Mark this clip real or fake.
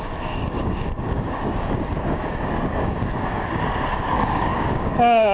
fake